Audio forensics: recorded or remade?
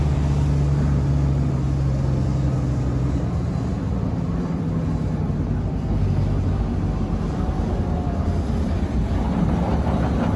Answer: recorded